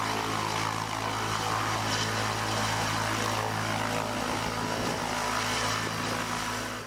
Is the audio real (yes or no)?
yes